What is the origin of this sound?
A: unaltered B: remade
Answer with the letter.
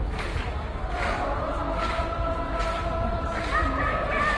A